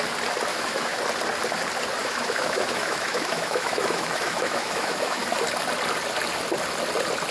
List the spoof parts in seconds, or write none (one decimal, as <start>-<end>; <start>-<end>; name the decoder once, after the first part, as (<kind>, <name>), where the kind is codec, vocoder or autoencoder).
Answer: 0.5-1.0 (autoencoder, DAC-VAE); 2.0-5.2